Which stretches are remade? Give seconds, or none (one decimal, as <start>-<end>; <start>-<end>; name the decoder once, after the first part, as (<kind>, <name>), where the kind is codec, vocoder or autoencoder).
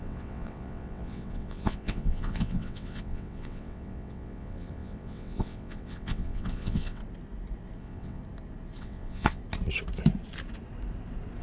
0.0-7.0 (vocoder, WaveNeXt); 7.8-8.2; 8.8-9.4